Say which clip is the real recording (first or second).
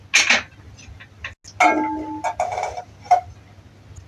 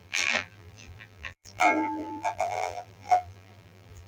first